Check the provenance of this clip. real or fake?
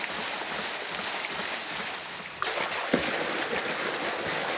real